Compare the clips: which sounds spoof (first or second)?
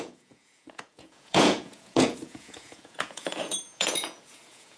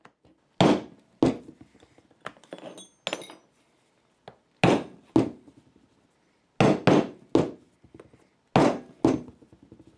first